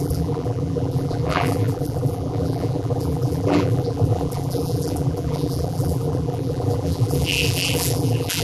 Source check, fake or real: fake